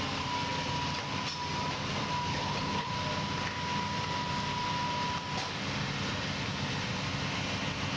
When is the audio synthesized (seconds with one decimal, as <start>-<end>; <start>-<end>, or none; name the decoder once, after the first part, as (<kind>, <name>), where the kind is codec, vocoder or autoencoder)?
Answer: 2.3-2.9 (codec, HILCodec)